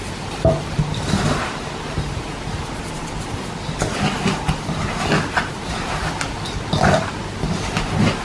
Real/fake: real